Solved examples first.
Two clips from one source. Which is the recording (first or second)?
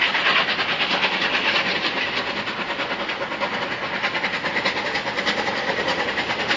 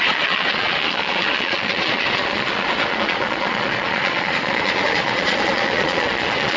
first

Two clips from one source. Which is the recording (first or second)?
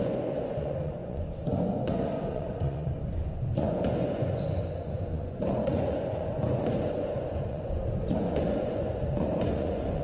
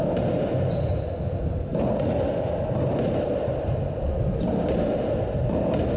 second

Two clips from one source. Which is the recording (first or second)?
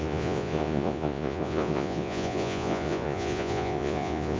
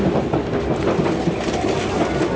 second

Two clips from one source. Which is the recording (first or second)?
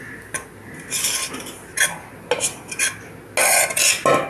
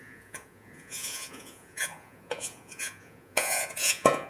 first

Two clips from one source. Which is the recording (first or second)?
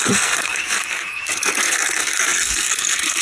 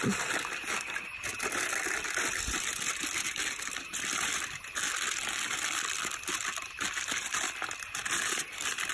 second